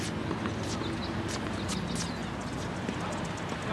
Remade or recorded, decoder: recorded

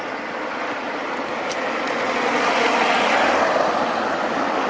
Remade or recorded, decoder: recorded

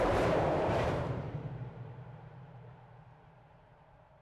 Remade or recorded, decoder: remade, vocoder, BigVGAN v2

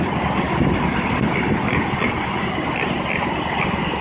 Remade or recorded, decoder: recorded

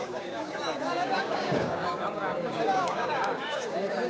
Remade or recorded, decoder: remade, codec, DAC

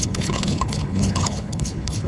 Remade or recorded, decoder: remade, codec, HILCodec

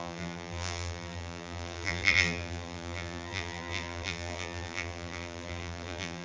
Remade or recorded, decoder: remade, vocoder, BigVGAN v2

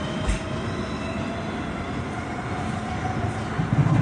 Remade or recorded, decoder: recorded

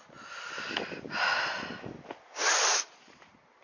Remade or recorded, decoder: recorded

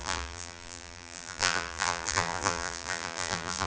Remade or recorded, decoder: remade, vocoder, BigVGAN v2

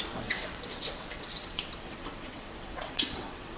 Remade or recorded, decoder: remade, vocoder, WaveNeXt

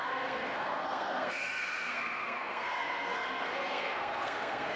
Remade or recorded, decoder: remade, codec, SNAC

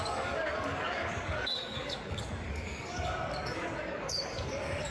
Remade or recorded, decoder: remade, codec, DAC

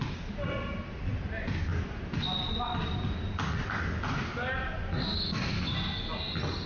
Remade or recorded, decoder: recorded